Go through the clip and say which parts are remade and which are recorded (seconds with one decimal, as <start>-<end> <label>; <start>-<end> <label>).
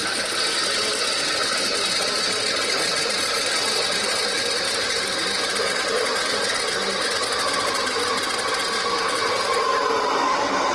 0.0-10.7 recorded